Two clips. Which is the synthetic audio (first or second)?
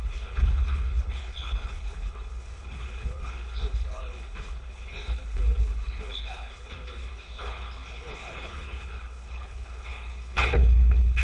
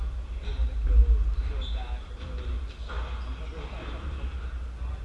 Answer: first